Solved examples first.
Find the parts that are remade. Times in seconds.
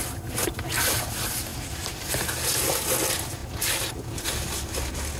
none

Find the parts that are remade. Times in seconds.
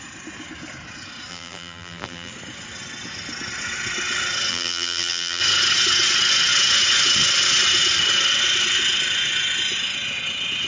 1.3-2.3 (vocoder, BigVGAN v2); 4.5-5.4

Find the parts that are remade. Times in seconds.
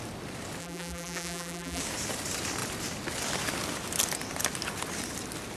0.6-1.8 (vocoder, BigVGAN v2)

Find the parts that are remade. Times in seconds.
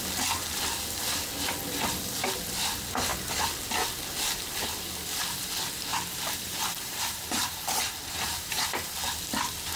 5.9-9.1 (vocoder, BigVGAN v2)